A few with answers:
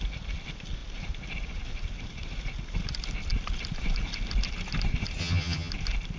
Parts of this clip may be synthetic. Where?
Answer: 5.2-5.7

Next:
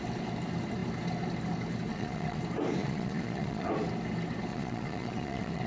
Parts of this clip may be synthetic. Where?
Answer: 1.9-2.4; 2.8-3.7; 4.5-5.7

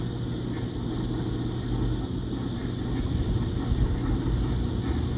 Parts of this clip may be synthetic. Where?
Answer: none

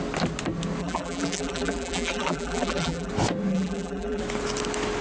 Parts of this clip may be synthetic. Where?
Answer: 0.8-3.1; 3.5-4.2

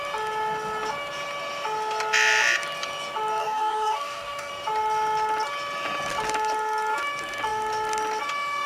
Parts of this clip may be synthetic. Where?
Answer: 3.4-4.5

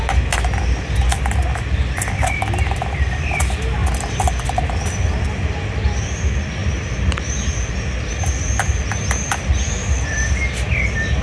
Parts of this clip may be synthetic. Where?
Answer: 6.6-7.7

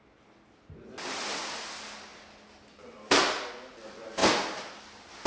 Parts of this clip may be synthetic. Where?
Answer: none